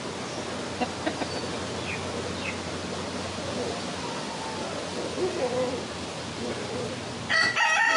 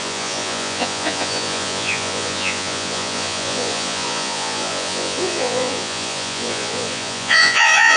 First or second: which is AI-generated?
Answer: second